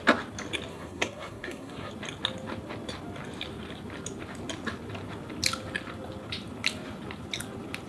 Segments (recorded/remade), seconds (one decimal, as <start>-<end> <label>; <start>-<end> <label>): 0.0-0.7 recorded; 0.7-1.9 remade; 1.9-7.9 recorded